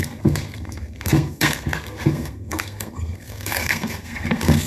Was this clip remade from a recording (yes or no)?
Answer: yes